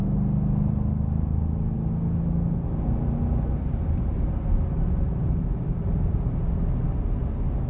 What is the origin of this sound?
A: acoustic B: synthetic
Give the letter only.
A